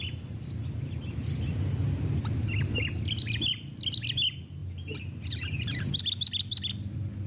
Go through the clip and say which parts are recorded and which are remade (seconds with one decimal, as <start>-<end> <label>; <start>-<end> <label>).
0.0-4.6 recorded; 4.6-5.9 remade; 5.9-7.3 recorded